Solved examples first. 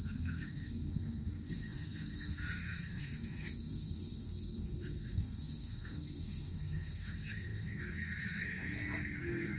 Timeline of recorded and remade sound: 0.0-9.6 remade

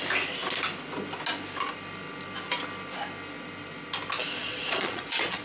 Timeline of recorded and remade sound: 0.0-4.4 recorded; 4.4-5.4 remade

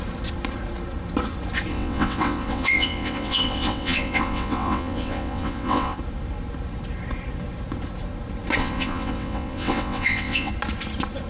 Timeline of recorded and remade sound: 0.0-1.7 recorded; 1.7-6.0 remade; 6.0-8.6 recorded; 8.6-10.5 remade; 10.5-11.3 recorded

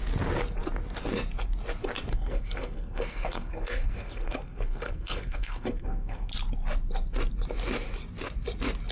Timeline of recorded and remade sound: 0.0-2.1 recorded; 2.1-6.3 remade; 6.3-8.9 recorded

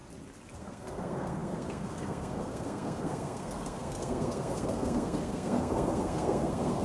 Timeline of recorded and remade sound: 0.0-0.6 recorded; 0.6-6.8 remade